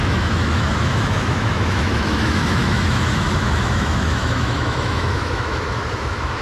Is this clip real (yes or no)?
no